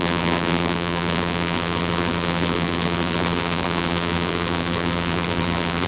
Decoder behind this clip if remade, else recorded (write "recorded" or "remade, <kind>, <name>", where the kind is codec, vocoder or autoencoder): remade, vocoder, BigVGAN v2